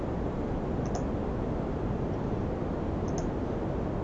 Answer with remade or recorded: recorded